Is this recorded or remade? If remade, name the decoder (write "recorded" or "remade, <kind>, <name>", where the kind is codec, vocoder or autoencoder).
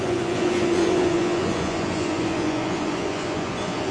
remade, vocoder, Vocos